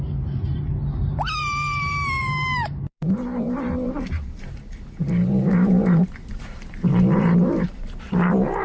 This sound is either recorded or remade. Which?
remade